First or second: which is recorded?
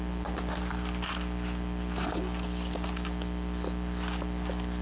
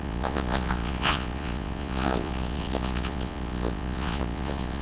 first